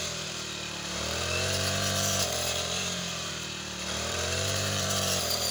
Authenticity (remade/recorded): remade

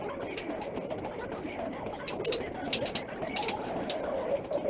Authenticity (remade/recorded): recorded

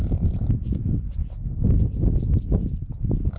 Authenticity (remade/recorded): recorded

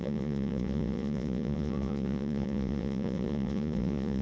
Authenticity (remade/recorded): remade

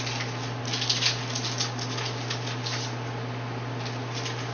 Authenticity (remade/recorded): recorded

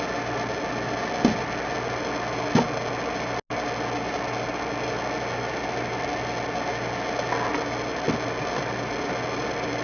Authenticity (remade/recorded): recorded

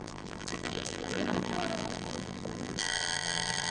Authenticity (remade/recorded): remade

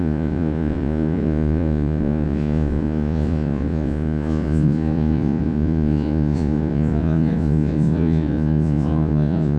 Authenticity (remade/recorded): remade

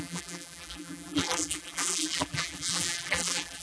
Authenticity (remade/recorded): remade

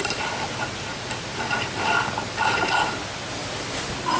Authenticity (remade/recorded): recorded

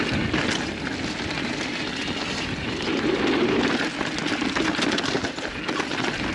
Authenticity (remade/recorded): recorded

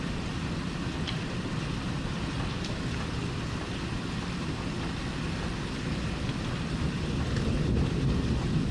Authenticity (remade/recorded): recorded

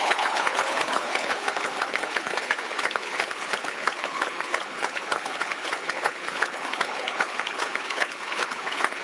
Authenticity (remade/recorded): remade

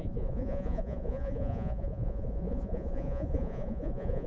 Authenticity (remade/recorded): remade